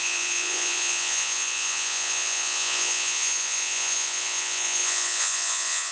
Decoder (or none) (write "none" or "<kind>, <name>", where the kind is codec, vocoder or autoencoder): vocoder, Vocos